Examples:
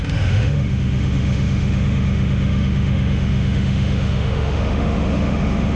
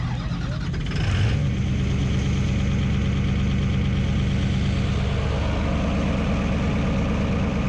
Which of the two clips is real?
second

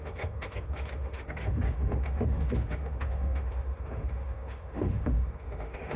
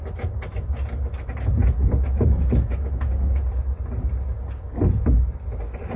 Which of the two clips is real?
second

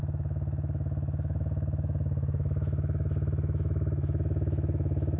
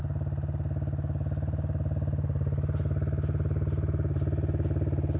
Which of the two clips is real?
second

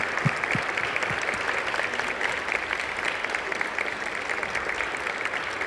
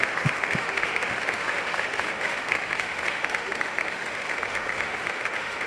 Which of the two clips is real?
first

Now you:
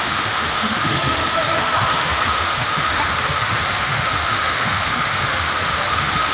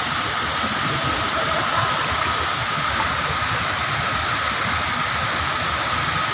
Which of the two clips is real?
second